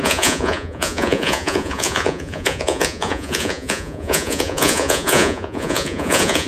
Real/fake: fake